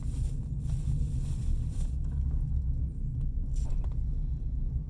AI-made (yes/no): no